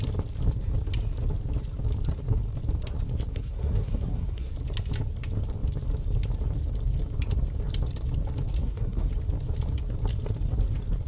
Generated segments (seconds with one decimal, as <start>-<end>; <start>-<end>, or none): 3.3-4.5; 8.6-9.1